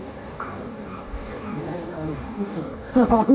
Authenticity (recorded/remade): remade